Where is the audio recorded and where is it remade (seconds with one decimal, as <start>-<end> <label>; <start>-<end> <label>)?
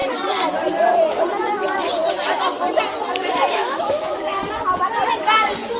0.0-3.5 recorded; 3.5-4.4 remade; 4.4-5.8 recorded